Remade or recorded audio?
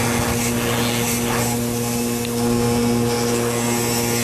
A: recorded